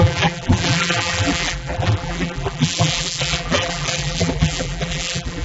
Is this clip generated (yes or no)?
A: yes